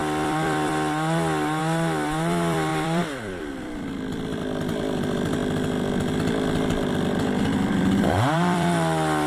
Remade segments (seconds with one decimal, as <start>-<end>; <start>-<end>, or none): 0.0-5.4; 6.6-9.3